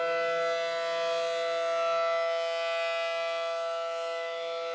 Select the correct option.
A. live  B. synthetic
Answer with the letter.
A